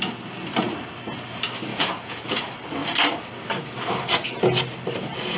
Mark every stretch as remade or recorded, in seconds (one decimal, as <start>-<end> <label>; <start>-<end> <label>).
0.0-1.7 recorded; 1.7-2.4 remade; 2.4-5.4 recorded